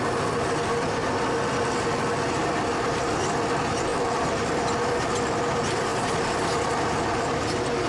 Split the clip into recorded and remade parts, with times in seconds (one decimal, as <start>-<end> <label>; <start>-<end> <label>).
0.0-1.0 recorded; 1.0-1.7 remade; 1.7-3.9 recorded; 3.9-4.6 remade; 4.6-5.9 recorded; 5.9-6.7 remade; 6.7-7.9 recorded